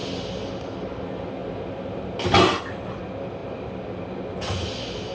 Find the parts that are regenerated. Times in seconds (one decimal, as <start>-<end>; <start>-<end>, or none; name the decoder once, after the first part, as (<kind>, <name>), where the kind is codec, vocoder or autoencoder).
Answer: none